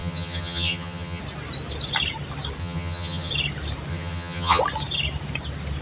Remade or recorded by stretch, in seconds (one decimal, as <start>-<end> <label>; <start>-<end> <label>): 0.0-1.2 remade; 1.2-2.6 recorded; 2.6-3.3 remade; 3.3-3.9 recorded; 3.9-4.6 remade; 4.6-5.8 recorded